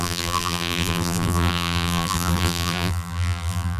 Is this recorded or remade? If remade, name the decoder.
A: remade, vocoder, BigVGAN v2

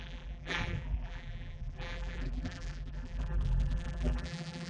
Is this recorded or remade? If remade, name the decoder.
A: remade, vocoder, BigVGAN v2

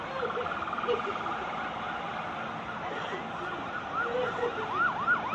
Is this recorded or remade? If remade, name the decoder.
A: recorded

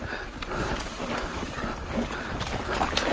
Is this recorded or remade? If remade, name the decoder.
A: recorded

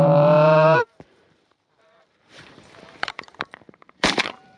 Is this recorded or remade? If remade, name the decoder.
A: remade, vocoder, BigVGAN v2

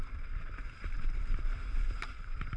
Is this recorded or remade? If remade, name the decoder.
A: remade, vocoder, BigVGAN v2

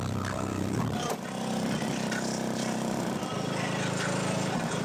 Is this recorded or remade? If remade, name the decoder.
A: remade, vocoder, BigVGAN v2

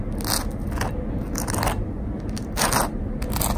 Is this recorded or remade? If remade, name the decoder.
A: recorded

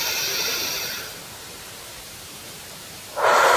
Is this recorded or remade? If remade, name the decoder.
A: remade, vocoder, BigVGAN v2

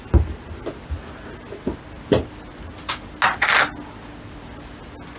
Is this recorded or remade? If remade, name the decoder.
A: recorded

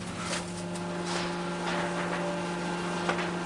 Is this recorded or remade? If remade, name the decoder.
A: recorded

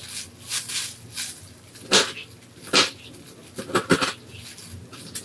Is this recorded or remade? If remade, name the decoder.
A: recorded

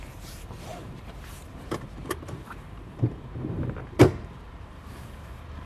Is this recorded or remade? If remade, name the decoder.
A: remade, vocoder, BigVGAN v2